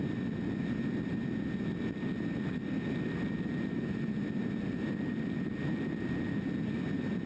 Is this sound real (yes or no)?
yes